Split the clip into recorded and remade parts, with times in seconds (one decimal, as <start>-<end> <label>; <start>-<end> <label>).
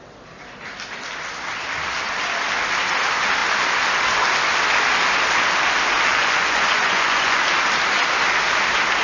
0.0-6.1 recorded; 6.1-7.4 remade; 7.4-9.0 recorded